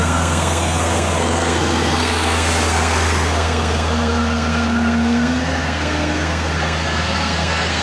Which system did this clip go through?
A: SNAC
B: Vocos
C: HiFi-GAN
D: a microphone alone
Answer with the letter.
A